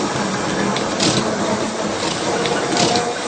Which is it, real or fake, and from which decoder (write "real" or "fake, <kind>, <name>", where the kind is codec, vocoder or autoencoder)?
real